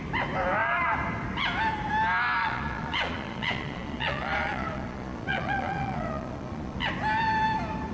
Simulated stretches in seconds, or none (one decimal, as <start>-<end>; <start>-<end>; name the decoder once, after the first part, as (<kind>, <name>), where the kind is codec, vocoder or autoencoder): 2.4-6.8 (vocoder, Vocos)